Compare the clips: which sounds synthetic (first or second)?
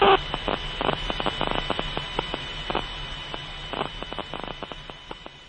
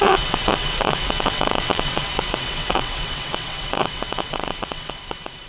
second